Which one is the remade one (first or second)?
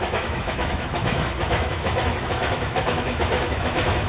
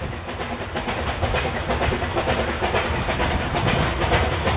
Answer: first